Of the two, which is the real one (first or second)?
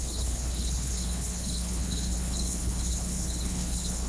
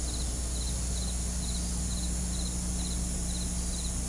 second